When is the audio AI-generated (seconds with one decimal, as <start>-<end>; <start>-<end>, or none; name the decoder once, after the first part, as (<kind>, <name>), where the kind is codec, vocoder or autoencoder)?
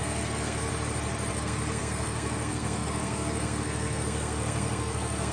0.0-0.7 (codec, SNAC); 1.3-5.3